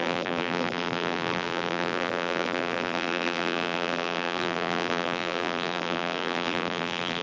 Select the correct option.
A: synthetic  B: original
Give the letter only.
A